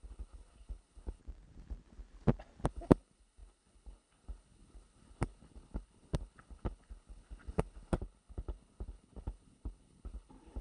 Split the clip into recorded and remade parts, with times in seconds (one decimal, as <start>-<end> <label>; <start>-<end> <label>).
0.0-1.2 remade; 1.2-2.7 recorded; 2.7-10.6 remade